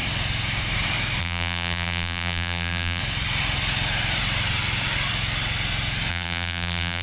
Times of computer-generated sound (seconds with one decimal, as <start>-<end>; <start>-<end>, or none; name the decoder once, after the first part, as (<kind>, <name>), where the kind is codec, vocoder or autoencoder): 1.2-3.0 (vocoder, BigVGAN v2); 6.1-7.0

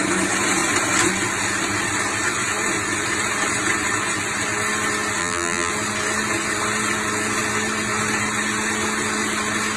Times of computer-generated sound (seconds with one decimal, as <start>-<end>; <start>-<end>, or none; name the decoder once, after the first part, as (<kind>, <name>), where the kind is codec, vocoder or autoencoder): 5.2-5.7 (vocoder, BigVGAN v2)